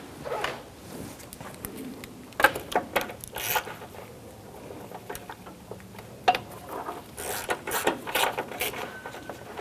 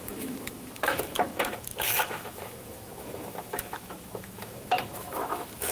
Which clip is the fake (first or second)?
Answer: second